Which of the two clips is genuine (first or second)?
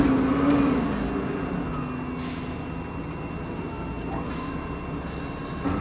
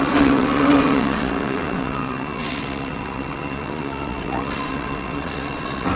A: first